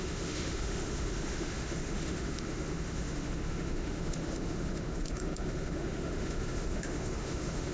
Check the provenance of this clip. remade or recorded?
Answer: remade